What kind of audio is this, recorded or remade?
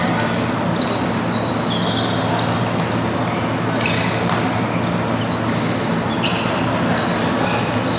recorded